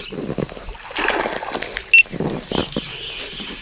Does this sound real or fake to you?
real